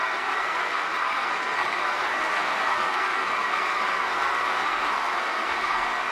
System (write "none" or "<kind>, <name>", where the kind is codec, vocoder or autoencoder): codec, SNAC